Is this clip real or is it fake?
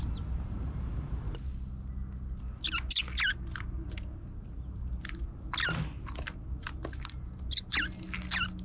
real